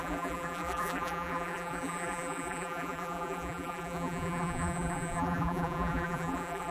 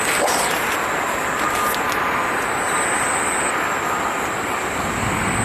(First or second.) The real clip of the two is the second